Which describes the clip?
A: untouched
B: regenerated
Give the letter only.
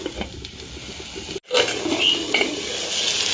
A